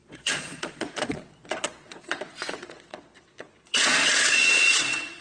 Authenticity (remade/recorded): remade